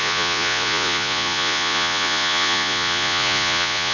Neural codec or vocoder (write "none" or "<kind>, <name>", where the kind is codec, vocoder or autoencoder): vocoder, Vocos